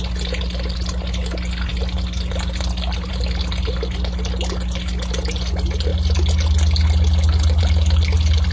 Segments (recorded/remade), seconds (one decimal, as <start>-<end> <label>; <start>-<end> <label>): 0.0-8.5 recorded